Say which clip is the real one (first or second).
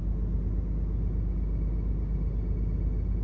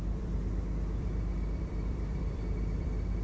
first